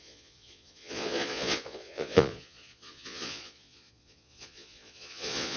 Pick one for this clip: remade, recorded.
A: remade